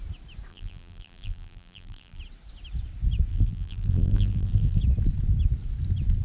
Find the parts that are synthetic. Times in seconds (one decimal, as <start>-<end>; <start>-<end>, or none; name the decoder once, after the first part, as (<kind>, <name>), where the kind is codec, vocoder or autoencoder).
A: 0.5-2.2 (vocoder, BigVGAN v2); 3.3-4.8